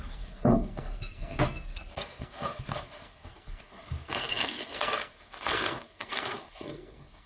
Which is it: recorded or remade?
remade